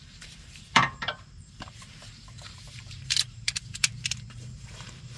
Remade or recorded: remade